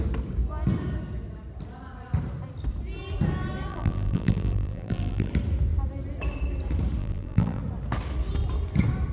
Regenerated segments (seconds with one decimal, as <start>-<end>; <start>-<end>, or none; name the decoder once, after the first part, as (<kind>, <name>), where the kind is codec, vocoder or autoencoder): 3.7-5.3 (vocoder, BigVGAN v2); 7.0-7.6